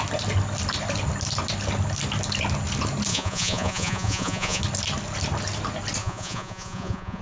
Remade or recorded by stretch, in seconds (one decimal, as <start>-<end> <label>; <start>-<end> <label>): 0.0-3.1 recorded; 3.1-4.6 remade; 4.6-6.0 recorded; 6.0-7.2 remade